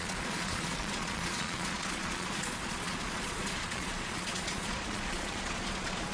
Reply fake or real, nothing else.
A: fake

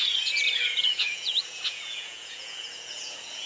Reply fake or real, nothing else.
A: fake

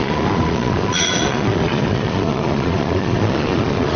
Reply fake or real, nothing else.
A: fake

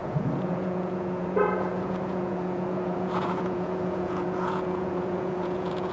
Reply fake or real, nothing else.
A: fake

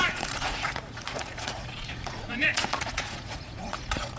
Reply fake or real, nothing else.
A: fake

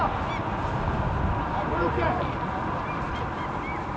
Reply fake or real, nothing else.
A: real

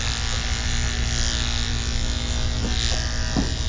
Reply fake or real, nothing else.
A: real